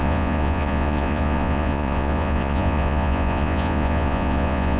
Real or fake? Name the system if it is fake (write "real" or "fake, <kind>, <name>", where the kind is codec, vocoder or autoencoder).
fake, vocoder, Vocos